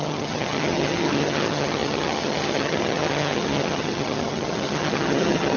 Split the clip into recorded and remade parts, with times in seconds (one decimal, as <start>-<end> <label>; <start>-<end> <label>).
0.0-5.6 remade